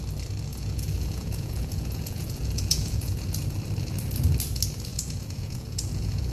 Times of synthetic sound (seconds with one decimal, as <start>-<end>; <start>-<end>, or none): 0.5-3.4; 4.9-6.3